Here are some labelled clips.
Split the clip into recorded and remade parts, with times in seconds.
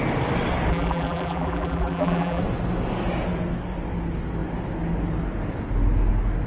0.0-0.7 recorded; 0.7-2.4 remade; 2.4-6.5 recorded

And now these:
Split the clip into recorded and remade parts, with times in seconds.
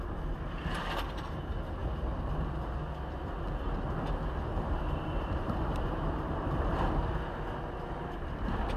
0.0-4.5 recorded; 4.5-6.8 remade; 6.8-8.8 recorded